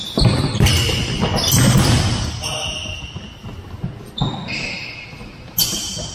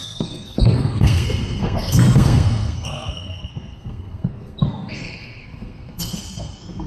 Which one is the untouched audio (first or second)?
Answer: first